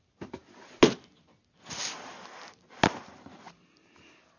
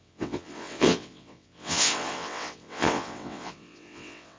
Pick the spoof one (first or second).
second